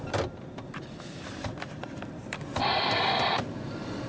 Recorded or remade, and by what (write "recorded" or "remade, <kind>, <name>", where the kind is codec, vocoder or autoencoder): remade, vocoder, BigVGAN v2